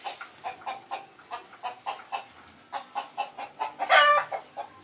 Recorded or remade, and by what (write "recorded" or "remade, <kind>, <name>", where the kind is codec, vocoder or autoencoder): recorded